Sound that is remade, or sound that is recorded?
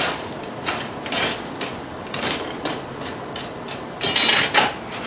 recorded